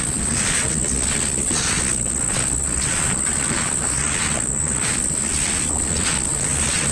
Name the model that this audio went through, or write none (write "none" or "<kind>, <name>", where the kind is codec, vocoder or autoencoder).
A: vocoder, Vocos